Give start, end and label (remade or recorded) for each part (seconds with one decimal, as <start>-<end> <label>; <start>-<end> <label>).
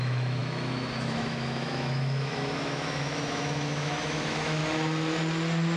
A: 0.0-4.6 remade; 4.6-5.8 recorded